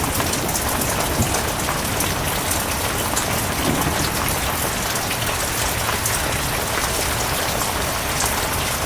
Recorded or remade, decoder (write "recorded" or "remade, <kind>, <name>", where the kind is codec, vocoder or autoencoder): recorded